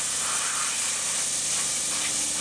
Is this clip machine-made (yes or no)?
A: no